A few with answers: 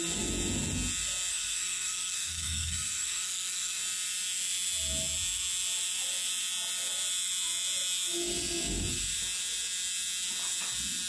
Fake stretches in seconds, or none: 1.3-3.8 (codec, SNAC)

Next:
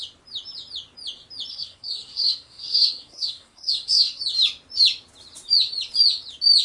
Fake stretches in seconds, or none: 1.5-4.2 (codec, SNAC)

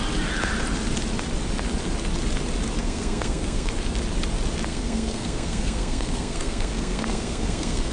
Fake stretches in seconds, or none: 2.8-3.7 (codec, SNAC); 4.7-7.9